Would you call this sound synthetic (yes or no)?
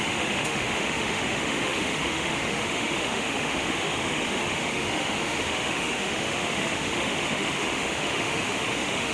yes